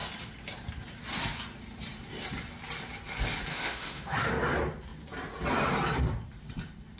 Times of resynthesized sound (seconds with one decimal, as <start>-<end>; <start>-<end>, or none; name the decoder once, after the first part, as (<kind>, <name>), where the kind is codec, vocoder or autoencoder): 3.5-4.3 (autoencoder, DAC-VAE)